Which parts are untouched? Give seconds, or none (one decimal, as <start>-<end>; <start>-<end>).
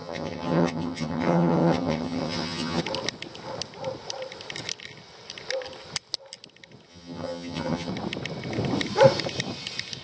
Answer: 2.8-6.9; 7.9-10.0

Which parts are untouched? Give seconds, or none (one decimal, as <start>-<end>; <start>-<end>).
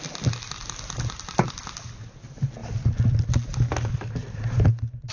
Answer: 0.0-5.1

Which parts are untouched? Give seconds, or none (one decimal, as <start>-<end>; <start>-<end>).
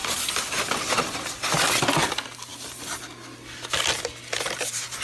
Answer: 0.0-5.0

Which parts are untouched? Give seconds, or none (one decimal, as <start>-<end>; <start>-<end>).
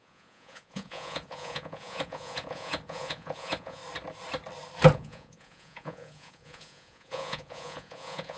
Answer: 3.8-4.9